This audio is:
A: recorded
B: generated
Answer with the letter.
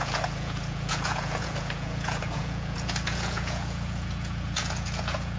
B